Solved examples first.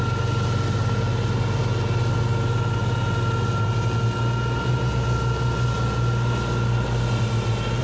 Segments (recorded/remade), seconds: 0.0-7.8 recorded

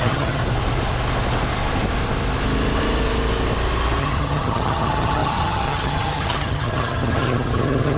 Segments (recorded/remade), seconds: 0.0-0.4 remade; 0.4-4.0 recorded; 4.0-8.0 remade

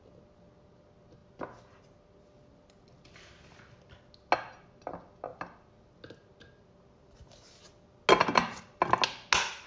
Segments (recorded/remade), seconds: 0.0-9.7 recorded

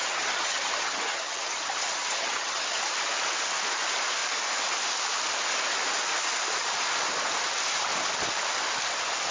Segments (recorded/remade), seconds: 0.0-2.8 remade; 2.8-9.3 recorded

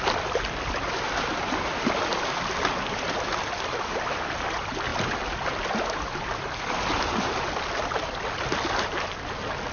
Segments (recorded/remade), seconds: 0.0-9.7 recorded

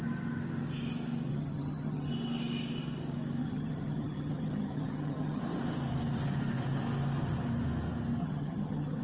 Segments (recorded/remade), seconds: 0.0-1.3 recorded; 1.3-2.1 remade; 2.1-3.4 recorded; 3.4-5.4 remade; 5.4-8.2 recorded; 8.2-9.0 remade

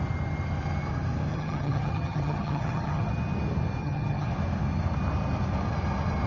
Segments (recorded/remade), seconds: 0.0-1.3 recorded; 1.3-3.1 remade; 3.1-3.8 recorded; 3.8-4.3 remade; 4.3-6.3 recorded